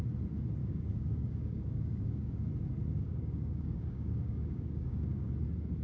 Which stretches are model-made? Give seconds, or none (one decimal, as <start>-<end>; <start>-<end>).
0.6-2.5; 2.9-5.3